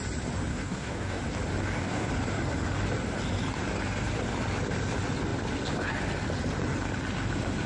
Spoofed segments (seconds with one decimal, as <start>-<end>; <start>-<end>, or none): 0.5-1.2; 1.6-2.1